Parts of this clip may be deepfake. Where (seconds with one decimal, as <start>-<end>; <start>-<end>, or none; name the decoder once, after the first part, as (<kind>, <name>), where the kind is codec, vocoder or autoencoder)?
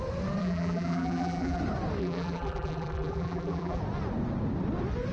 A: 0.4-1.6 (vocoder, BigVGAN v2); 2.0-3.8